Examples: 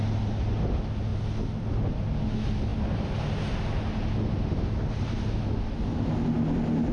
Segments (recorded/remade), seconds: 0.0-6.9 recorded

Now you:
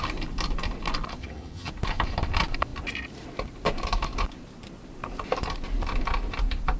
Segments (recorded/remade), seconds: 0.0-1.2 recorded; 1.2-1.7 remade; 1.7-6.8 recorded

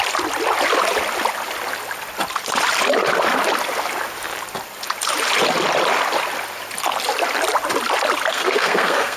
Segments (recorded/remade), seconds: 0.0-8.3 recorded; 8.3-9.2 remade

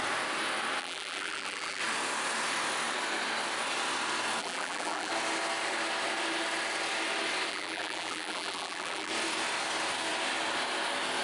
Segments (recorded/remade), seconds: 0.0-0.8 recorded; 0.8-1.8 remade; 1.8-4.4 recorded; 4.4-5.1 remade; 5.1-7.5 recorded; 7.5-9.1 remade; 9.1-11.2 recorded

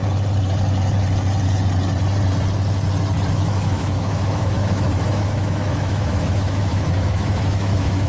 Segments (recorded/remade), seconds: 0.0-3.3 recorded; 3.3-8.1 remade

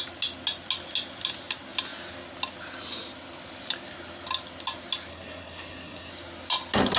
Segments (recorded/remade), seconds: 0.0-5.1 recorded; 5.1-6.1 remade; 6.1-7.0 recorded

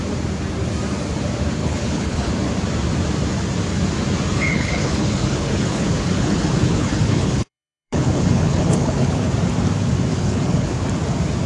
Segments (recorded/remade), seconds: 0.0-1.6 recorded; 1.6-2.3 remade; 2.3-4.3 recorded; 4.3-9.3 remade; 9.3-10.1 recorded; 10.1-10.8 remade; 10.8-11.5 recorded